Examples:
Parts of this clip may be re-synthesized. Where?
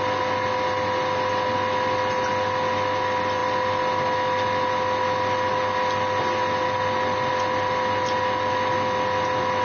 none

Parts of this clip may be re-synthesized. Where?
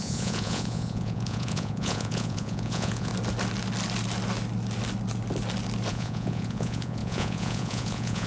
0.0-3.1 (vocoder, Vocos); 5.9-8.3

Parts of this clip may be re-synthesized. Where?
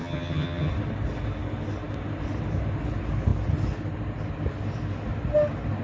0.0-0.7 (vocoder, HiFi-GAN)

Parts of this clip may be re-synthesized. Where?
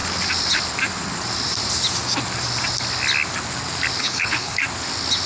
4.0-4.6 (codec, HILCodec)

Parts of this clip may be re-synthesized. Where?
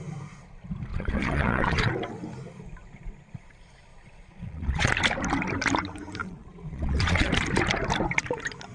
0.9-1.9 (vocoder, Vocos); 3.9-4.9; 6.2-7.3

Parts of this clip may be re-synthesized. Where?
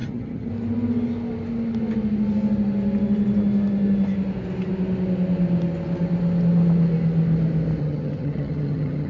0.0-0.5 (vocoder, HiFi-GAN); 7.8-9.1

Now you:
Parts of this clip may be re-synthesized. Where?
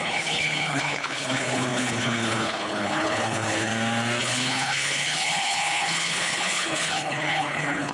0.0-3.7 (codec, HILCodec); 4.2-7.9